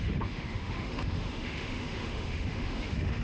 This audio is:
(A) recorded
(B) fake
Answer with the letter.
B